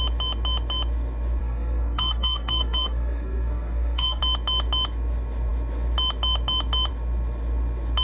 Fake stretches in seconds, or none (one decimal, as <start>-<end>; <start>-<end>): 1.4-4.2